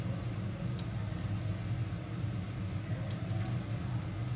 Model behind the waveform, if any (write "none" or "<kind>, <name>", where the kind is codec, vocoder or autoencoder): none